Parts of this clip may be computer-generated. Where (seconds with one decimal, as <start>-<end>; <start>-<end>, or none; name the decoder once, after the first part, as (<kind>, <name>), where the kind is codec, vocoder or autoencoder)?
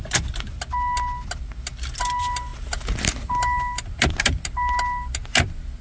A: none